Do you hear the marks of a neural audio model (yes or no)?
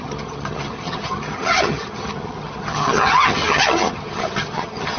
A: yes